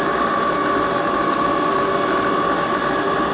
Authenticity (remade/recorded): recorded